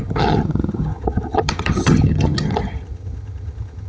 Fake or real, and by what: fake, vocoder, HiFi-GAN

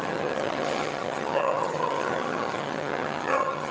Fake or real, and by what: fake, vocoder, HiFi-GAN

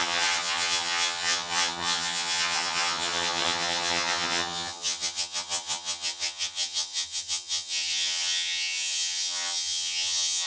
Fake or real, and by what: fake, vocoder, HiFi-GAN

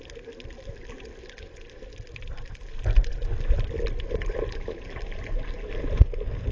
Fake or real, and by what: real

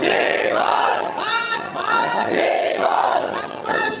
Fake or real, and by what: fake, vocoder, HiFi-GAN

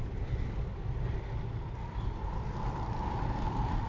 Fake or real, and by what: real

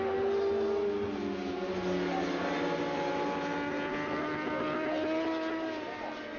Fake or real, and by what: real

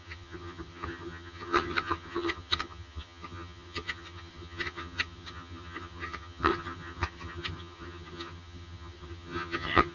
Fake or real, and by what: fake, vocoder, HiFi-GAN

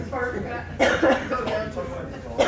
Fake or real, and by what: real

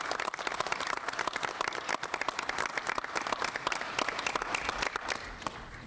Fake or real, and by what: real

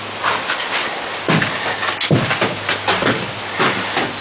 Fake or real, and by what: real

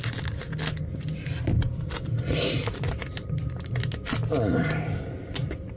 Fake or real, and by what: real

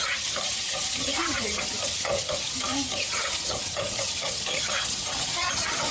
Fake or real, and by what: fake, vocoder, HiFi-GAN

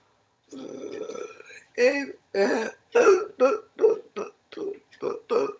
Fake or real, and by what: fake, vocoder, HiFi-GAN